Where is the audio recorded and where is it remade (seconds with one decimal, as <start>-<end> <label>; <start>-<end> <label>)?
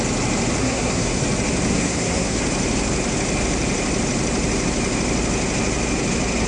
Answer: 0.0-0.6 recorded; 0.6-1.2 remade; 1.2-1.7 recorded; 1.7-2.4 remade; 2.4-6.5 recorded